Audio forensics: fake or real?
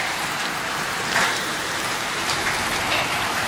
fake